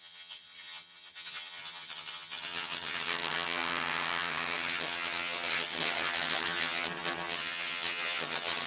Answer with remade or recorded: remade